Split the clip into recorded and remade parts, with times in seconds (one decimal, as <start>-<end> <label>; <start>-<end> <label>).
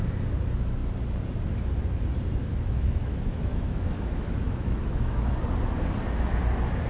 0.0-2.5 recorded; 2.5-5.3 remade; 5.3-6.9 recorded